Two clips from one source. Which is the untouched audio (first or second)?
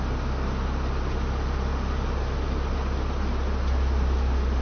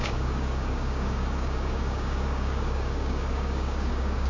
first